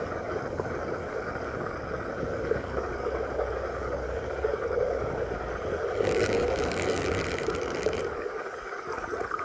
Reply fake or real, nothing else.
fake